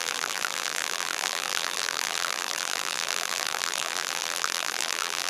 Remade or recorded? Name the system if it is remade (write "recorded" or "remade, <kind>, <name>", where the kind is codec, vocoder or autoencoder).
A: remade, vocoder, BigVGAN v2